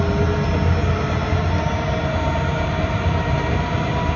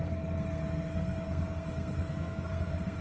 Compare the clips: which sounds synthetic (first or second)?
second